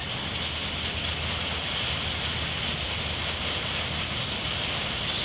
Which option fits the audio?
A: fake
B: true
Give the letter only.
B